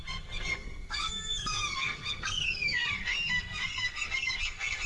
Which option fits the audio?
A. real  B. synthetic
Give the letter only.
B